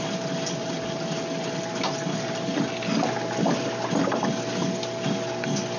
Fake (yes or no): no